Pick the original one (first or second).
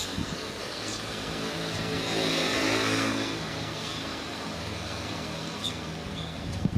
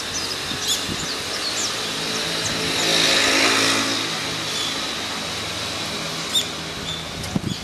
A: second